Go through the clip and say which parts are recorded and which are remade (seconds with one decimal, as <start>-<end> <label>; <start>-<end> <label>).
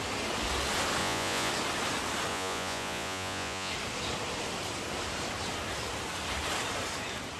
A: 0.0-1.0 recorded; 1.0-1.5 remade; 1.5-2.3 recorded; 2.3-3.7 remade; 3.7-7.4 recorded